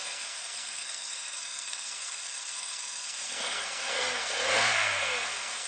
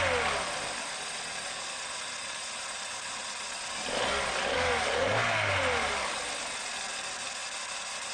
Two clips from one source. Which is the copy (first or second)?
first